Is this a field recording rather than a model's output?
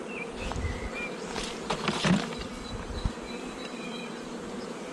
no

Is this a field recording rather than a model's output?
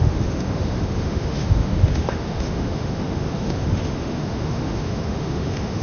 no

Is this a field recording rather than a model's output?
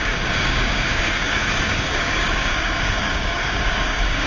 no